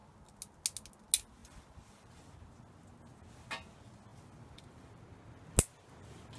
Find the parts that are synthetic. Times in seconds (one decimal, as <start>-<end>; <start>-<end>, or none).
1.4-2.2; 4.1-5.0